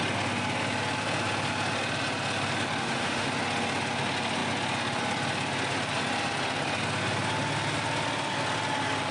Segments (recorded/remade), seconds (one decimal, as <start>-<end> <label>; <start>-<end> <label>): 0.0-2.8 recorded; 2.8-3.3 remade; 3.3-9.1 recorded